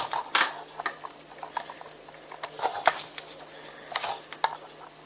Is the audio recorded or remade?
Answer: recorded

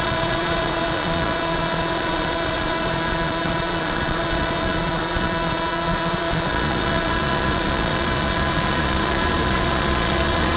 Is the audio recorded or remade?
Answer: remade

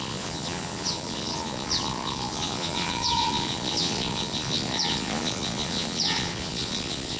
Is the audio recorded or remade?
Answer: remade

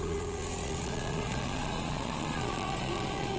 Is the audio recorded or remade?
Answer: remade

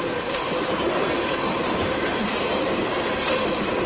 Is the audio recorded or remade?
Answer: recorded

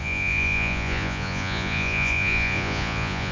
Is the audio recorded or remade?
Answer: remade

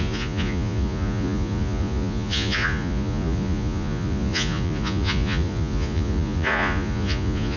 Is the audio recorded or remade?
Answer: remade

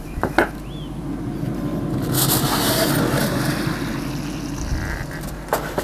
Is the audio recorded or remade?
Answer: recorded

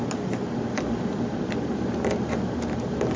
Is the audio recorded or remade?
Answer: recorded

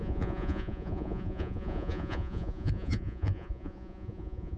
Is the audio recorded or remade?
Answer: remade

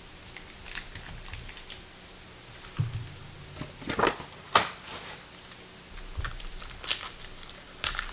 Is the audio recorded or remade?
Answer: recorded